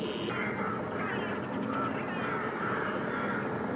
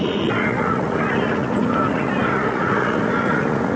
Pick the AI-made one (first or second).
second